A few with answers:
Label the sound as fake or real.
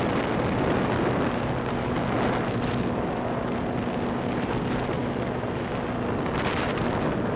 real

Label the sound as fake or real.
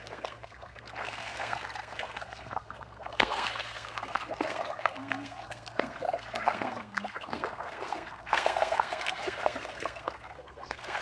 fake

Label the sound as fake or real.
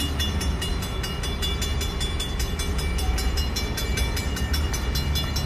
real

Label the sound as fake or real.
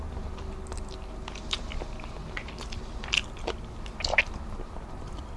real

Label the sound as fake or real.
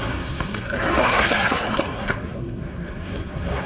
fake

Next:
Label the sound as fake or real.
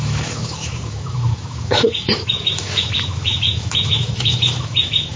fake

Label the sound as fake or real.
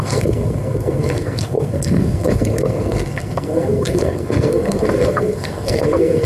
fake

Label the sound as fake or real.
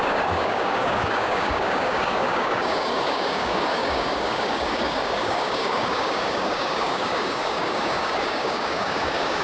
fake